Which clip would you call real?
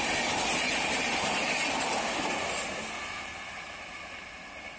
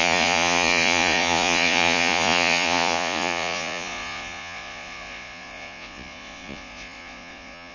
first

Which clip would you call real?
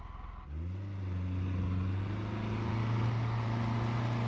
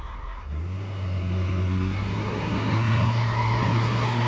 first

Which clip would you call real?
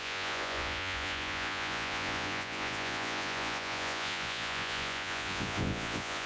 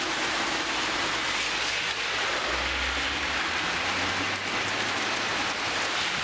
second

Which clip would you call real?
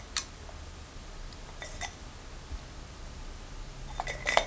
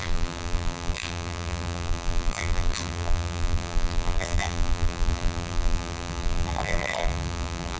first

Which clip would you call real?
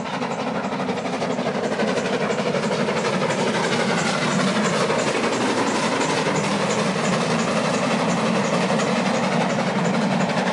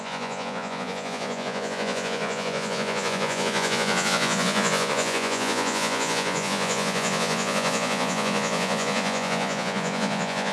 first